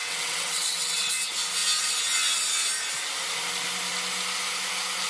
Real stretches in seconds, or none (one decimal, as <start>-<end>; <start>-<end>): 1.1-5.1